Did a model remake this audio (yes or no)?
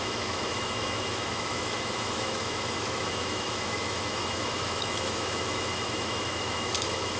yes